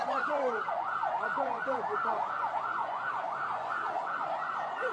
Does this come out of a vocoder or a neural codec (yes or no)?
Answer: yes